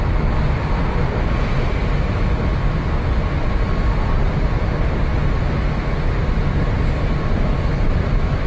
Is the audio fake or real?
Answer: real